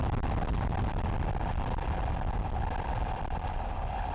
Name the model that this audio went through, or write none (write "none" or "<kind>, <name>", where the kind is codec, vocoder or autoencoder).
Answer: none